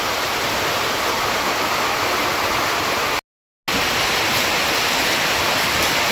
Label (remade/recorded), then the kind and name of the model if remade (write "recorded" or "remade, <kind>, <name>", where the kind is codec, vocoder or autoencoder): recorded